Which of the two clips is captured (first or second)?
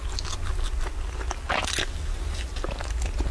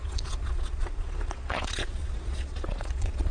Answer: first